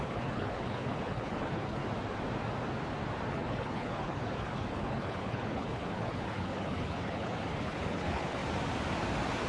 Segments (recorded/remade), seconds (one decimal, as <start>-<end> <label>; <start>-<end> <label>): 0.0-1.8 remade; 1.8-3.3 recorded; 3.3-8.4 remade; 8.4-9.5 recorded

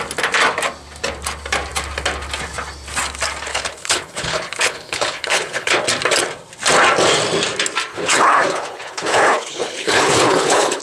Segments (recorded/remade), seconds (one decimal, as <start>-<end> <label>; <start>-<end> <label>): 0.0-3.5 recorded; 3.5-5.8 remade; 5.8-7.9 recorded; 7.9-10.8 remade

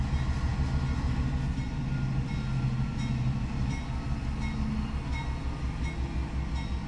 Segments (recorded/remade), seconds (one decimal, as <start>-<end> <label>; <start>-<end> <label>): 0.0-6.9 recorded

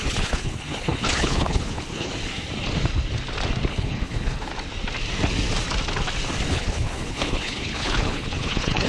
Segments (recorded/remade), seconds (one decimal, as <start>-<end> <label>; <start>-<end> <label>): 0.0-2.1 remade; 2.1-3.7 recorded; 3.7-4.5 remade; 4.5-6.5 recorded; 6.5-8.9 remade